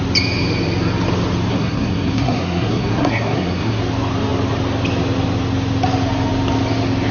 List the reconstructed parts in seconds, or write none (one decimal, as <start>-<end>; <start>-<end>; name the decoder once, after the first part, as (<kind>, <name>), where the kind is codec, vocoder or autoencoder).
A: 1.5-3.8 (codec, SNAC)